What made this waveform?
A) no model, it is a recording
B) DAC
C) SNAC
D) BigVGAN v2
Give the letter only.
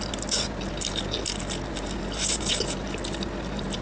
A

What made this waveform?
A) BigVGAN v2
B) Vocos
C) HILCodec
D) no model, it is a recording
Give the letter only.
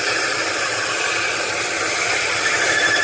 A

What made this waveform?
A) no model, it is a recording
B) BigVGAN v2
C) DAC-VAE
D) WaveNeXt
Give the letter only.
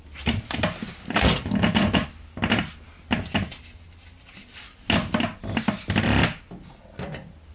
A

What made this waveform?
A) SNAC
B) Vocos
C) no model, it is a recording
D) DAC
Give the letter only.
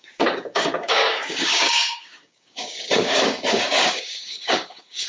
D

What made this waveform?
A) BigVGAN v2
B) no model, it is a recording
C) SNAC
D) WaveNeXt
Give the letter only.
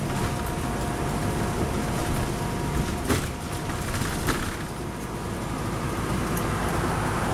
B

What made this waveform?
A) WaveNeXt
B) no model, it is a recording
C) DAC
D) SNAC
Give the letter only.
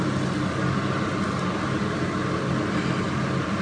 B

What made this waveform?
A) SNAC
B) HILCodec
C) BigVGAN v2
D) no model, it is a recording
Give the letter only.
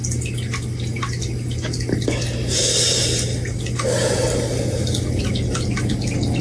D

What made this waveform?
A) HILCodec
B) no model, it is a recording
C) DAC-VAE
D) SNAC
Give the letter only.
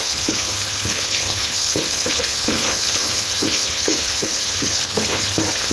A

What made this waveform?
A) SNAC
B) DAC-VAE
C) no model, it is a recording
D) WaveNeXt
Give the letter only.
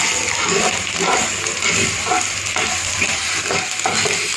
C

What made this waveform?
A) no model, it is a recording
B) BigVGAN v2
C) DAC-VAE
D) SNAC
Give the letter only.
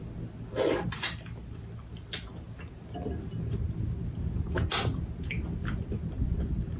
A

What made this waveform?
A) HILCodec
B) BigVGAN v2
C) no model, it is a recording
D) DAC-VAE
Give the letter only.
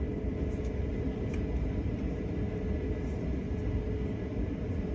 C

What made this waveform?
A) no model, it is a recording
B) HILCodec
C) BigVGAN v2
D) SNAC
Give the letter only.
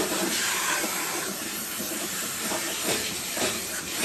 C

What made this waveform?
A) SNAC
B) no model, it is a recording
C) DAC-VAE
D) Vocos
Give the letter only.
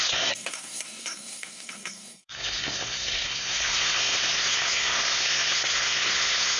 A